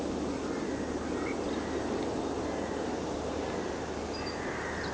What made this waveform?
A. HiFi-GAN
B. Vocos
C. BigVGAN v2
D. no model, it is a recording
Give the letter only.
D